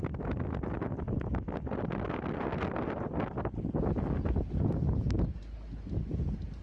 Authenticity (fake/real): real